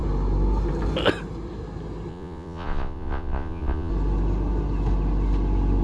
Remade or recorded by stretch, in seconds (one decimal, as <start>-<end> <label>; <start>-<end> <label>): 0.0-2.1 recorded; 2.1-3.9 remade; 3.9-5.8 recorded